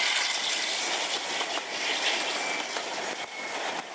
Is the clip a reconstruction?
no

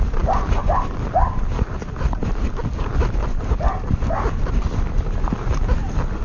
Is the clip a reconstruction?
yes